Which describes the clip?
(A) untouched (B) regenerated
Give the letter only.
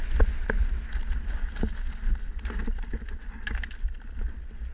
A